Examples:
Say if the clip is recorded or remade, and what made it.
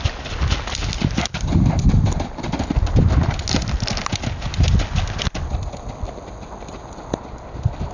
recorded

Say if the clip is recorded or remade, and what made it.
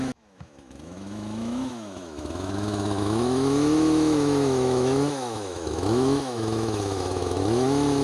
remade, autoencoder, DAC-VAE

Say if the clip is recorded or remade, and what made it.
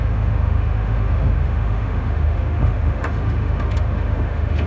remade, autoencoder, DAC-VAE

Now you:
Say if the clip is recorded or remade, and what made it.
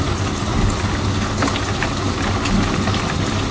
recorded